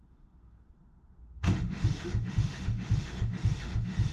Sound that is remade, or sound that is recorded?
remade